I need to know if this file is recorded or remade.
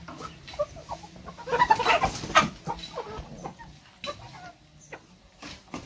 recorded